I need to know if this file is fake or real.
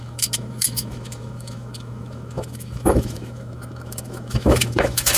fake